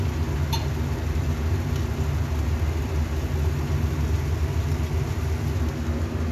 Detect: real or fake real